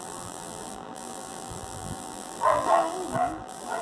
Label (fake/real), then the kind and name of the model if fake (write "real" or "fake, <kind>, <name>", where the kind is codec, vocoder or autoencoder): fake, vocoder, BigVGAN v2